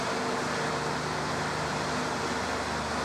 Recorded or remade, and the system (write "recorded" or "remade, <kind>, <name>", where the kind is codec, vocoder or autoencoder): recorded